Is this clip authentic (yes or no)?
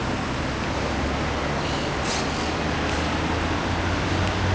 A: yes